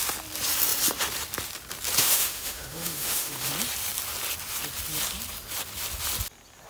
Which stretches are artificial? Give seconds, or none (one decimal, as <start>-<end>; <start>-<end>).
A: 2.0-3.5